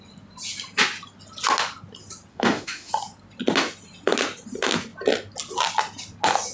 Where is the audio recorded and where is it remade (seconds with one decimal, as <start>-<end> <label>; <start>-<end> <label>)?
0.0-2.3 recorded; 2.3-2.9 remade; 2.9-6.5 recorded